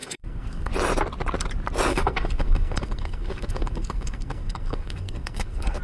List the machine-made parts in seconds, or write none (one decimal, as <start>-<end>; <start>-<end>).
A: 0.0-0.7; 1.9-5.8